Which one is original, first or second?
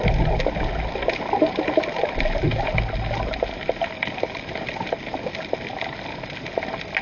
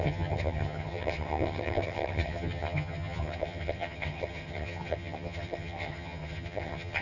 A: first